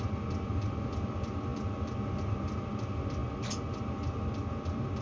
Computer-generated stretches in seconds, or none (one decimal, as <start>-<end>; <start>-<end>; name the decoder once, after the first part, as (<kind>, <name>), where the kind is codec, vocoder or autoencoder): none